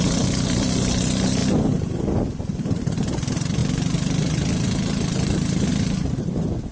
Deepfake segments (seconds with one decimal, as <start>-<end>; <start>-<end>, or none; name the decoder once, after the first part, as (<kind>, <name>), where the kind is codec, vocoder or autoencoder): 0.0-1.4 (vocoder, BigVGAN v2); 2.6-6.7